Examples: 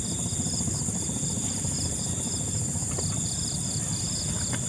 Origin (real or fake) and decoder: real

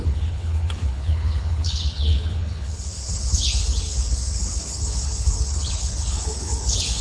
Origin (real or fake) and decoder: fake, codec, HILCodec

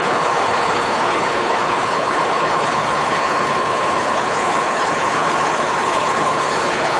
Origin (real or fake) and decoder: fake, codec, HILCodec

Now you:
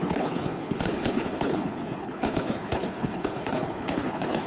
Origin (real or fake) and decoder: fake, codec, HILCodec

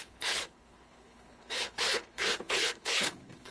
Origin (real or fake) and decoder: fake, codec, HILCodec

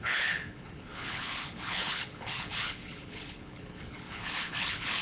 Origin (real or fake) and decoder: fake, codec, HILCodec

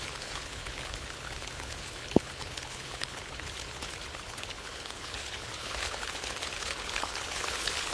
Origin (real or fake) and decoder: fake, codec, HILCodec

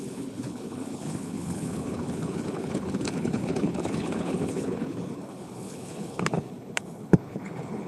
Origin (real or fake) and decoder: fake, codec, HILCodec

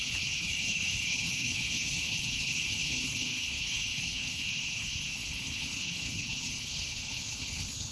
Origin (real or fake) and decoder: fake, codec, HILCodec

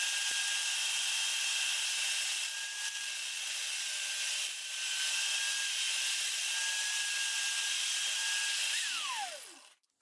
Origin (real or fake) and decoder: real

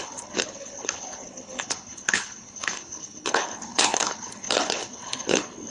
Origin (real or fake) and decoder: fake, codec, HILCodec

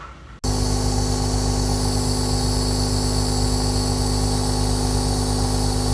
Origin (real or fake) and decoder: real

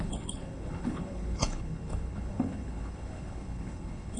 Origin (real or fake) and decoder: fake, codec, HILCodec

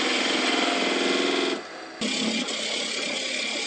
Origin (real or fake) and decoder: real